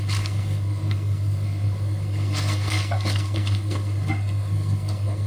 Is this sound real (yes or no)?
no